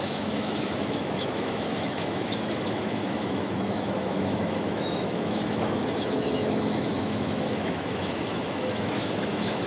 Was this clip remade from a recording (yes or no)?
yes